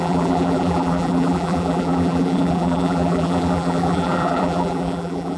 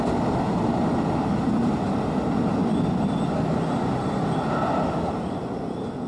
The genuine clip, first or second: second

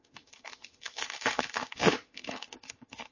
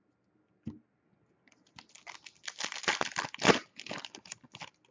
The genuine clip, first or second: second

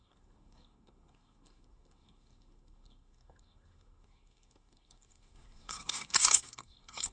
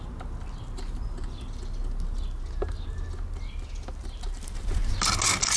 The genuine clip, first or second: second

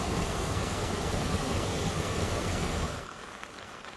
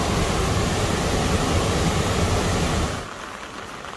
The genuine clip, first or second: second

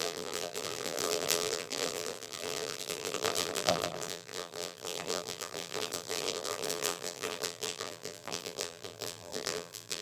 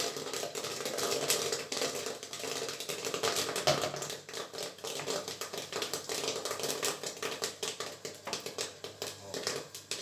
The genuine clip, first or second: second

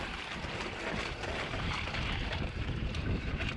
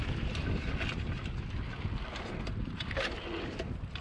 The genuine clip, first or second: second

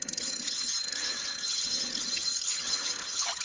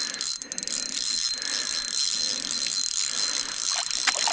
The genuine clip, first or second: second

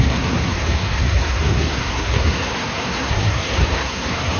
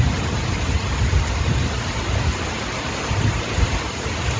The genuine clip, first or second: second